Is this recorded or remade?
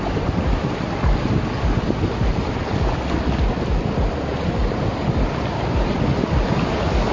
recorded